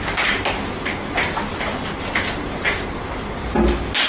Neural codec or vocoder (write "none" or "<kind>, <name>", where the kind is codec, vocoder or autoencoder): none